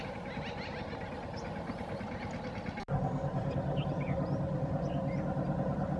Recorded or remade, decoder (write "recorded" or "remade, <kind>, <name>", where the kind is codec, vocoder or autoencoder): recorded